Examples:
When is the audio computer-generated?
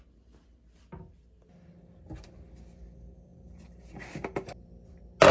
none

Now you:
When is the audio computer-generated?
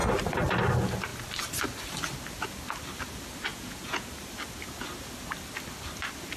3.5-4.1 (vocoder, Vocos)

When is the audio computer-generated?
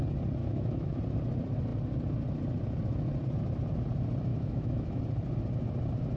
0.4-1.0 (autoencoder, DAC-VAE); 4.3-5.0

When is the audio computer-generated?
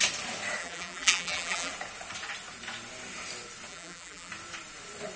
0.6-1.7 (vocoder, BigVGAN v2); 3.7-4.3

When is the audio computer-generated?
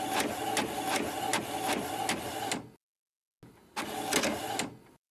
none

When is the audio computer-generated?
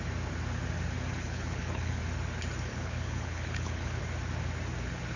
1.1-2.0 (codec, HILCodec); 2.7-4.0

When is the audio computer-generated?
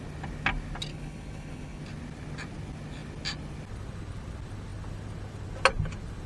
0.9-1.8 (codec, HILCodec)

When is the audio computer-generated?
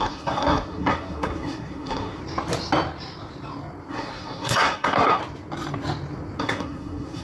0.0-2.2 (codec, SNAC); 3.9-5.2; 6.4-7.2